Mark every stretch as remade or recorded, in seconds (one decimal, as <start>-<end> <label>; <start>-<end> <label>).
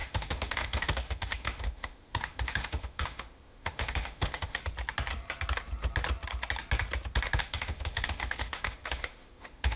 0.0-4.6 remade; 4.6-7.4 recorded; 7.4-9.8 remade